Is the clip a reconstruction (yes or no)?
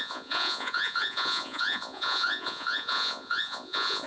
yes